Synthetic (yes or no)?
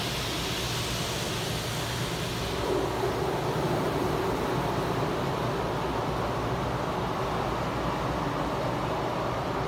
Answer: no